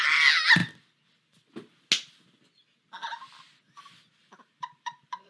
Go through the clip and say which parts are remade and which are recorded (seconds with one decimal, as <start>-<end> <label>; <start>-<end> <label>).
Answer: 0.0-4.2 recorded; 4.2-5.3 remade